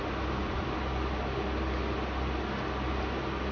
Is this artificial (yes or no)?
no